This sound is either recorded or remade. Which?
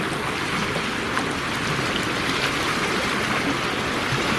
recorded